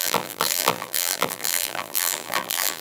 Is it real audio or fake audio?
fake